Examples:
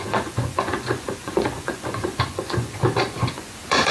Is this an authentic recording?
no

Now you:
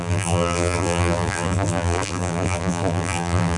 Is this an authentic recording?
no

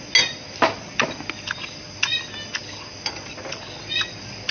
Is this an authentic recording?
yes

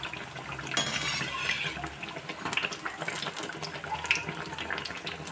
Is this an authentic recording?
yes